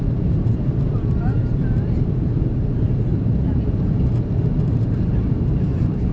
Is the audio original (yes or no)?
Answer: no